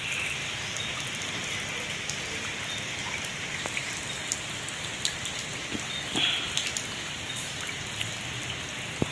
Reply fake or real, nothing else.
real